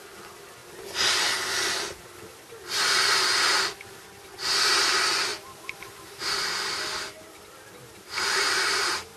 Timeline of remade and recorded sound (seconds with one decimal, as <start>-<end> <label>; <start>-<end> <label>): 0.0-0.6 remade; 0.6-3.1 recorded; 3.1-9.2 remade